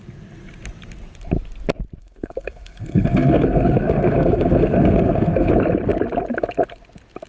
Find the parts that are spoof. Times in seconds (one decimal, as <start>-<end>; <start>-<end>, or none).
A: 2.0-5.5